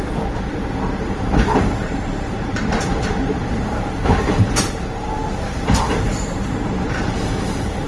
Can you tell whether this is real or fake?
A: fake